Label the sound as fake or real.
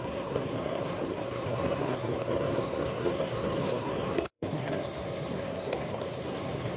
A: fake